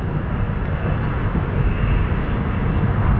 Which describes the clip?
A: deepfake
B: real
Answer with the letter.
B